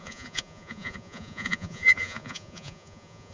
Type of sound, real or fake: fake